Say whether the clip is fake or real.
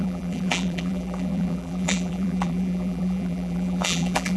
fake